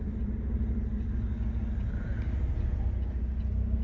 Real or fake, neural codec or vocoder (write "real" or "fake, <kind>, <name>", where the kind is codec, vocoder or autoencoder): real